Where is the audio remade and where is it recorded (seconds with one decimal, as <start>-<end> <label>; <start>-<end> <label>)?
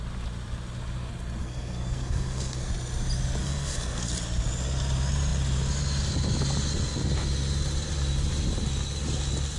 0.0-1.4 recorded; 1.4-2.7 remade; 2.7-3.4 recorded; 3.4-4.1 remade; 4.1-9.6 recorded